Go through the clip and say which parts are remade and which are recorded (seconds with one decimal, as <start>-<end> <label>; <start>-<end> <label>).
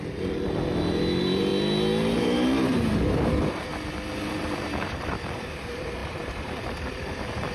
0.0-1.5 remade; 1.5-2.2 recorded; 2.2-3.7 remade; 3.7-4.3 recorded; 4.3-7.5 remade